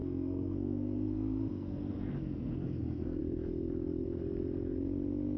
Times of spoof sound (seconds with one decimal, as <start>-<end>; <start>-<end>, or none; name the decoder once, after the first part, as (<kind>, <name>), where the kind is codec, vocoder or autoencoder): 0.0-3.2 (codec, SNAC)